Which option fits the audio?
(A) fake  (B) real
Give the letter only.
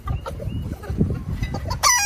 A